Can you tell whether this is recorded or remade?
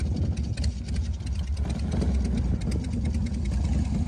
recorded